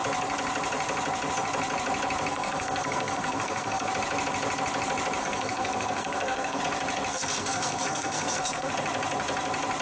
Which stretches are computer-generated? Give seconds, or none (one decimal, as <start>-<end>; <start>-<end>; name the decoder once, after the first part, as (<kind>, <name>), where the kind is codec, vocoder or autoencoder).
2.3-3.9 (codec, SNAC); 5.2-6.6; 7.1-8.7